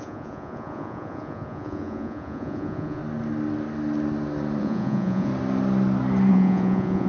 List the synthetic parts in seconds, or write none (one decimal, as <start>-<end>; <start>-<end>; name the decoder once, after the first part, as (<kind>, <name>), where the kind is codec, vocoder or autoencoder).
0.0-3.0 (vocoder, Vocos); 4.6-5.3; 6.3-7.1